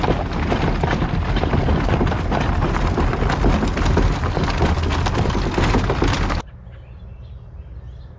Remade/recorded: recorded